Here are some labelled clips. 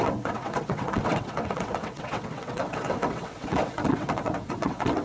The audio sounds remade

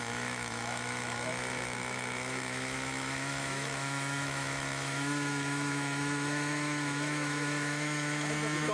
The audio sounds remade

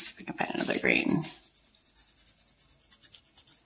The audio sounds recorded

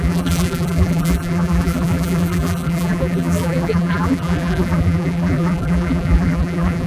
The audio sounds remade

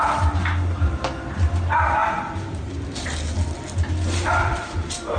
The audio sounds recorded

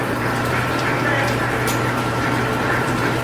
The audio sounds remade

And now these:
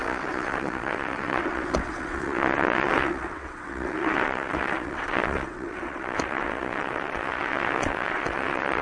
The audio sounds remade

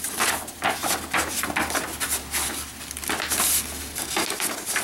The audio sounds recorded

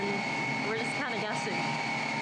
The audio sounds recorded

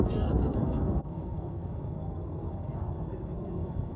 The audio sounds remade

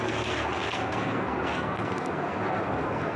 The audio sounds remade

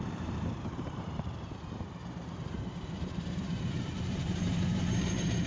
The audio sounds remade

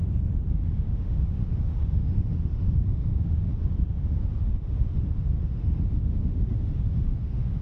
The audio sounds remade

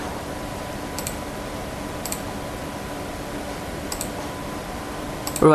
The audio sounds remade